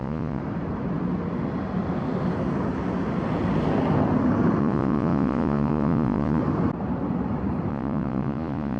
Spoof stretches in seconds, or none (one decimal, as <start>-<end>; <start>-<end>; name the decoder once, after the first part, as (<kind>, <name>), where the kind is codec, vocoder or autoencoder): 0.0-0.4 (vocoder, Vocos); 4.6-6.4; 7.7-8.8